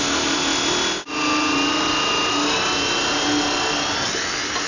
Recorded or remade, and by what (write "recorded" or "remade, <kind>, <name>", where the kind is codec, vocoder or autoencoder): recorded